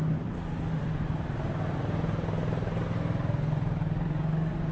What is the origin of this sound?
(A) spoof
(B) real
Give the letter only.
B